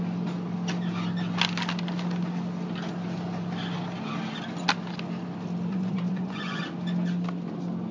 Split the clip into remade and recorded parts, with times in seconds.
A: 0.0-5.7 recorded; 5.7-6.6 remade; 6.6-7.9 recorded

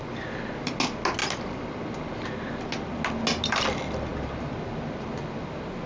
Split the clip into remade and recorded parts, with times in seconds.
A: 0.0-5.9 recorded

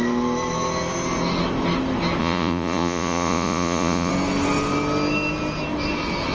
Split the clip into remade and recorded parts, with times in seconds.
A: 0.0-2.2 recorded; 2.2-4.1 remade; 4.1-6.3 recorded

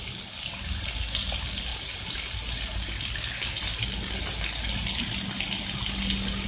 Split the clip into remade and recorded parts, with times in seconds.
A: 0.0-6.5 recorded

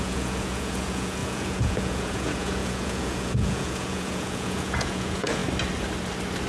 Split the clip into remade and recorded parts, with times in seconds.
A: 0.0-5.4 remade; 5.4-6.5 recorded

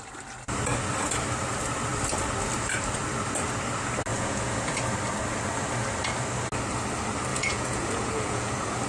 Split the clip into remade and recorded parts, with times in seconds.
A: 0.0-4.1 recorded; 4.1-4.8 remade; 4.8-7.3 recorded; 7.3-8.5 remade; 8.5-8.9 recorded

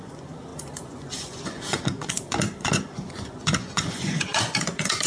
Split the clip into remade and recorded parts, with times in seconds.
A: 0.0-5.1 remade